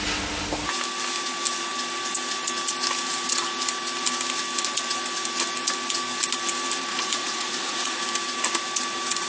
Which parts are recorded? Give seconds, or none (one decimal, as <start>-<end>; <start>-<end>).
0.0-6.9; 8.0-9.3